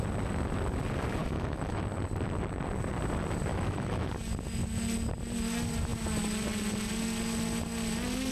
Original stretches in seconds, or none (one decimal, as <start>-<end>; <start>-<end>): 0.0-1.2; 1.8-3.5; 4.1-8.3